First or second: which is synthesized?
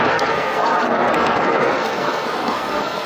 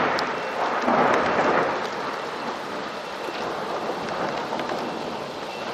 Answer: first